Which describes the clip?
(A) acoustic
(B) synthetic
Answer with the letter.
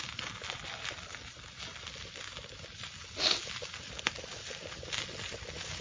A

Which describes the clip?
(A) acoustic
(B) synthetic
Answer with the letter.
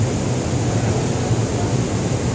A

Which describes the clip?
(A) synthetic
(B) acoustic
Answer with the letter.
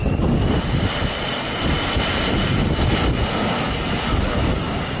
B